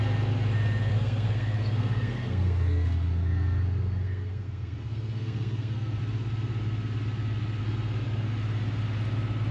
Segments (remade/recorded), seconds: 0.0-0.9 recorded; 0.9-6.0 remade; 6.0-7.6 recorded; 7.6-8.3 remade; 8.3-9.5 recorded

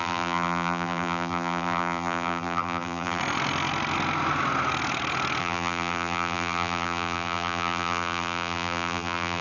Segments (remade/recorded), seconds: 0.0-3.2 remade; 3.2-5.4 recorded; 5.4-9.4 remade

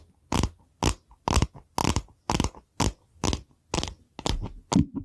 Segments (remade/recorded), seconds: 0.0-5.0 recorded

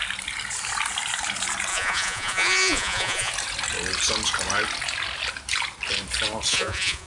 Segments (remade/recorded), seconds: 0.0-1.7 recorded; 1.7-3.3 remade; 3.3-6.5 recorded; 6.5-7.1 remade

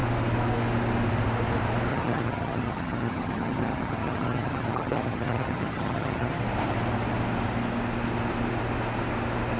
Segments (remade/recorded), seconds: 0.0-1.9 recorded; 1.9-6.4 remade; 6.4-9.6 recorded